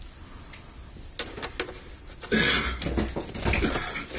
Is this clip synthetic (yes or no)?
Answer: no